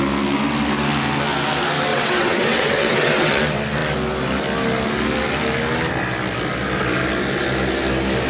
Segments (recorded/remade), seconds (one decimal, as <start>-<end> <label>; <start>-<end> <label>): 0.0-1.9 recorded; 1.9-3.4 remade; 3.4-8.3 recorded